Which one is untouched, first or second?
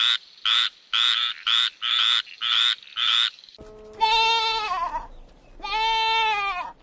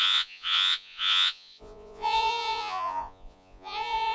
first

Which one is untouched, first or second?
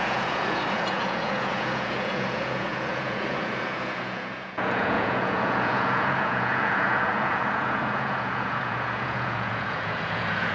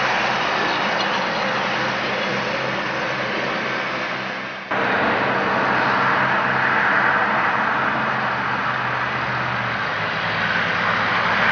second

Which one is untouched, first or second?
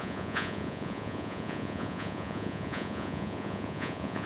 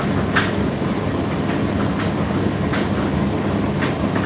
second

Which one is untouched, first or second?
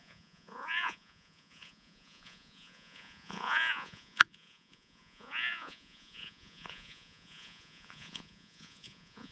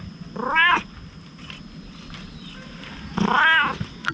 second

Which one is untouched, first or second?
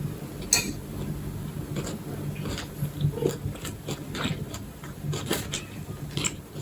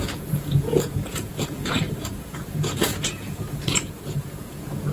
first